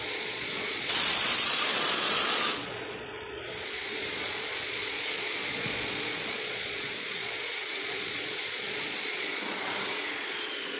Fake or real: fake